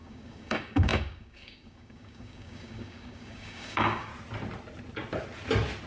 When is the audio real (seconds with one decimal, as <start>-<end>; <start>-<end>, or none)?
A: 4.1-5.9